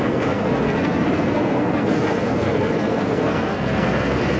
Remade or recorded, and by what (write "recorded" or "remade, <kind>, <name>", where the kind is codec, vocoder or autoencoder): remade, codec, SNAC